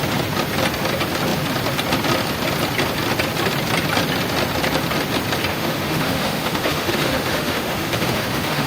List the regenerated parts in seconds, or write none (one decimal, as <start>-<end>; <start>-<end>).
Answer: 5.5-8.7